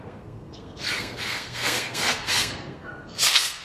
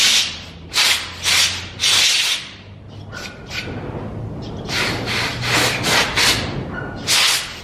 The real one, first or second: second